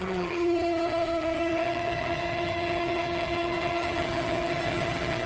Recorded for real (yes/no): no